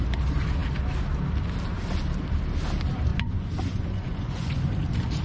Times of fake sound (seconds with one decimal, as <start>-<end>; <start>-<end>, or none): 3.1-4.6